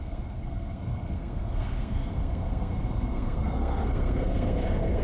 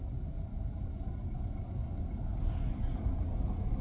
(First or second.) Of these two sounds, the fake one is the first